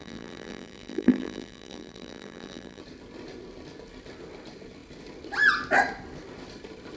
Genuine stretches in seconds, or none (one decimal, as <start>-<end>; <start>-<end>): 2.8-7.0